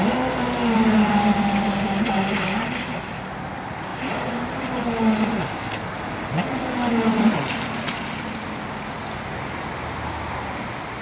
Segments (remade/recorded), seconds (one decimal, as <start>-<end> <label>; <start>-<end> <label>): 0.0-3.9 recorded; 3.9-4.7 remade; 4.7-11.0 recorded